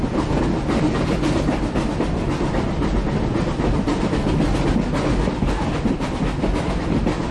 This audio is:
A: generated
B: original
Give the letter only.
B